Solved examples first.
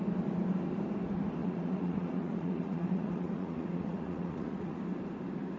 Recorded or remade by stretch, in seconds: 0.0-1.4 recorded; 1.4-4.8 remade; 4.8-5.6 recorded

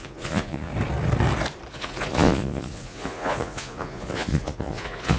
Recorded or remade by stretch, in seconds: 0.0-0.7 remade; 0.7-1.7 recorded; 1.7-5.2 remade

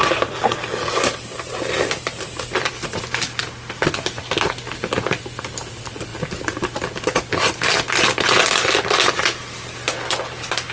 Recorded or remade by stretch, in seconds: 0.0-10.7 recorded

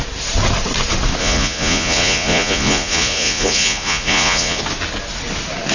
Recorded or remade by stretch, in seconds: 0.0-1.2 recorded; 1.2-4.6 remade; 4.6-5.7 recorded

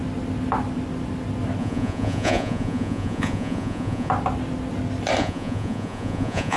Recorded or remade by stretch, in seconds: 0.0-1.6 recorded; 1.6-4.1 remade; 4.1-5.2 recorded; 5.2-6.6 remade

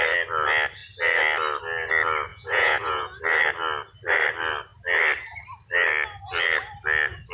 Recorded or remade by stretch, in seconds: 0.0-2.3 recorded; 2.3-3.2 remade; 3.2-7.3 recorded

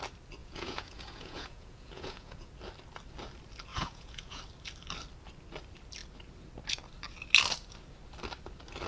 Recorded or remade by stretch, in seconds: 0.0-0.4 recorded; 0.4-2.5 remade; 2.5-3.7 recorded; 3.7-4.4 remade; 4.4-8.9 recorded